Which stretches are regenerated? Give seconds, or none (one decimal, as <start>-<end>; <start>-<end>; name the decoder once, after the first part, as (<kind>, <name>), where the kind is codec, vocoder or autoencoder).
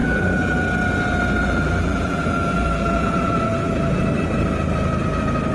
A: 0.0-0.6 (vocoder, BigVGAN v2); 1.4-4.0